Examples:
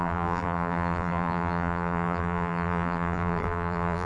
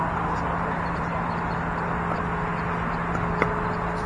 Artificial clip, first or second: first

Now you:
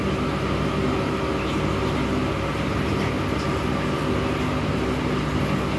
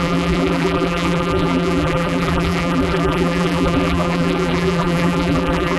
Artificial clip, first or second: second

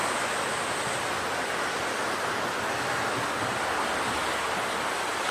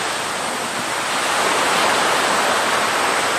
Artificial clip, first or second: second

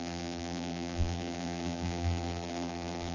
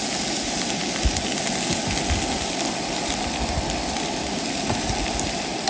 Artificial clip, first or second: first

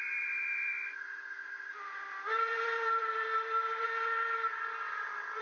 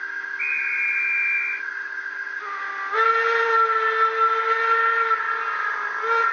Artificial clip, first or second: first